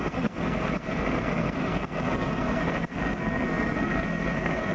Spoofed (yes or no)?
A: yes